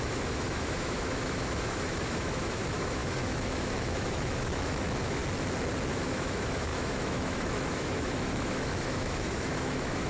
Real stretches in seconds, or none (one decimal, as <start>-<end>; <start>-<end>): 5.2-5.9